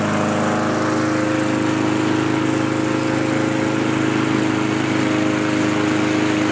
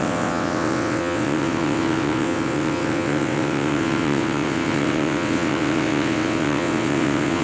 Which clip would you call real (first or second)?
first